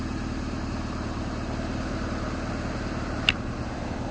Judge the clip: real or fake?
real